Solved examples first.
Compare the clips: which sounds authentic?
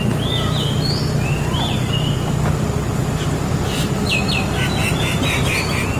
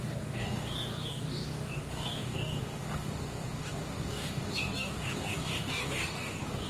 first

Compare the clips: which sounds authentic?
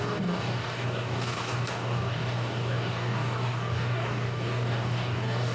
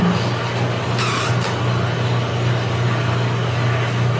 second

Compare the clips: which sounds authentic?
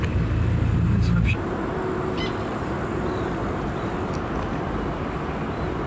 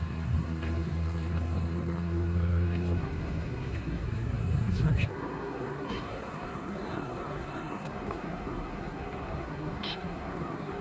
first